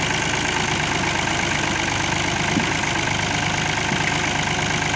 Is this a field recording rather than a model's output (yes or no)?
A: yes